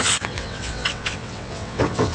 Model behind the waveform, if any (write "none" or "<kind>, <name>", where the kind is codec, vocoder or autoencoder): vocoder, WaveNeXt